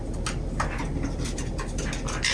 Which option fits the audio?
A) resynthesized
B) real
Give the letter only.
B